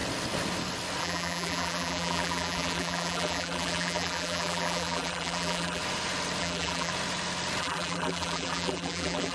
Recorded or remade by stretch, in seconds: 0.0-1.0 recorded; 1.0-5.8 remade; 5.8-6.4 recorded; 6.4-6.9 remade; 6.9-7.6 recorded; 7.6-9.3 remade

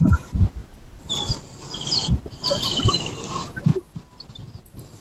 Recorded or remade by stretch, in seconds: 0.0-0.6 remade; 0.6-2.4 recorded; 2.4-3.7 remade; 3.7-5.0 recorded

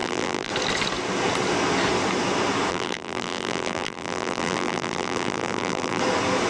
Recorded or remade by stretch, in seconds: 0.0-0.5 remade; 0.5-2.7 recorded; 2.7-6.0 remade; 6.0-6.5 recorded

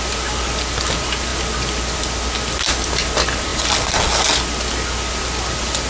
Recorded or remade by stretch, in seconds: 0.0-5.9 recorded

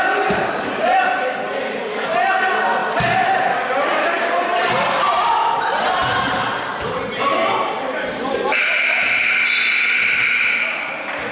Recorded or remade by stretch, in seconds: 0.0-2.8 remade; 2.8-3.9 recorded; 3.9-11.3 remade

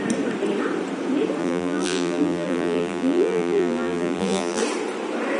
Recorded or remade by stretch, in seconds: 0.0-1.4 recorded; 1.4-4.6 remade; 4.6-5.4 recorded

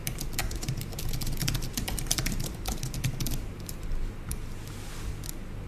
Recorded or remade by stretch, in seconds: 0.0-0.4 recorded; 0.4-1.0 remade; 1.0-1.4 recorded; 1.4-2.7 remade; 2.7-3.4 recorded; 3.4-4.6 remade; 4.6-5.7 recorded

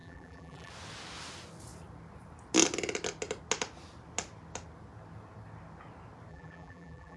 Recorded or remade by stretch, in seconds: 0.0-0.7 remade; 0.7-6.3 recorded; 6.3-7.2 remade